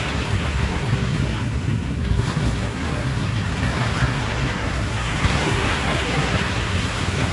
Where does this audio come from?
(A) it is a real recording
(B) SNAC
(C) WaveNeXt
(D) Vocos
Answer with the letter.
B